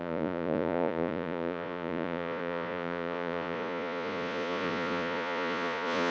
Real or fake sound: fake